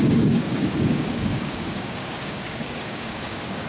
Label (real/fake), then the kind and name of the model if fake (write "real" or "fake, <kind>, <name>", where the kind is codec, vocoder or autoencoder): fake, codec, DAC